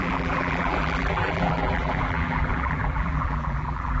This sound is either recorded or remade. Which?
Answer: remade